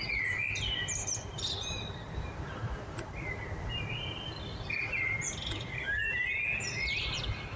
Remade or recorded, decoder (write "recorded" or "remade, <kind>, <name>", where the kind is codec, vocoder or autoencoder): recorded